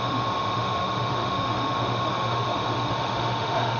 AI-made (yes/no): yes